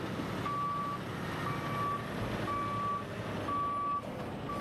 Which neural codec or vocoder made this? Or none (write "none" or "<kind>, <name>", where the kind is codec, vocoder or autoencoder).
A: none